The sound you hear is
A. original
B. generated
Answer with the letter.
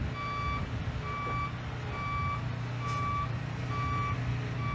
A